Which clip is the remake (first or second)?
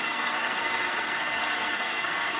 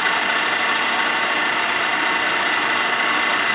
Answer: first